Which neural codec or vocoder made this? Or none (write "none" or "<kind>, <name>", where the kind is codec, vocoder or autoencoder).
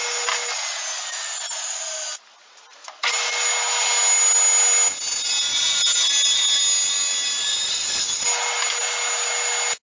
none